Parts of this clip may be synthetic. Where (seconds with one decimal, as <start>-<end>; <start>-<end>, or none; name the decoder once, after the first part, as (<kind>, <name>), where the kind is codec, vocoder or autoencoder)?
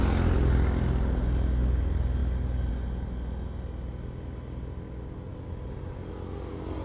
none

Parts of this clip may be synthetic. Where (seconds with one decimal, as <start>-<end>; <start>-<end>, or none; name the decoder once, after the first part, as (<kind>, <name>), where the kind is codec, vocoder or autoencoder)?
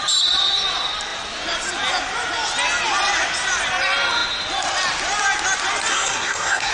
5.9-6.7 (codec, SNAC)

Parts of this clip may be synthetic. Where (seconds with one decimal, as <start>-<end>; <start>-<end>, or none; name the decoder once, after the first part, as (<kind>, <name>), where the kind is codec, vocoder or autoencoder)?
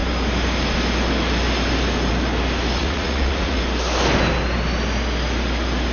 2.8-3.6 (vocoder, Vocos)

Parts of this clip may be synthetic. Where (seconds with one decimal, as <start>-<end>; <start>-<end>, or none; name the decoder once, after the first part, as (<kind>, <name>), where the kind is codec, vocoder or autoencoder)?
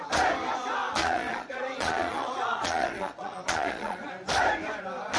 1.0-4.1 (vocoder, Vocos)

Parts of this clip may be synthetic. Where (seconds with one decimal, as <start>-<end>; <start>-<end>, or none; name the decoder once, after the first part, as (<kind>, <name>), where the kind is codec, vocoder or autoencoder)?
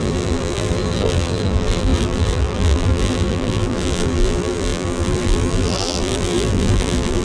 0.0-7.2 (vocoder, BigVGAN v2)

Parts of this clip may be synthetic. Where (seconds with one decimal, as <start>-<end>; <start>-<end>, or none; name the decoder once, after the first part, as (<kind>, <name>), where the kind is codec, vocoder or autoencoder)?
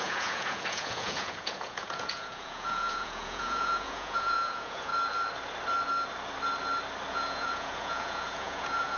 0.0-4.9 (vocoder, Vocos); 7.1-9.0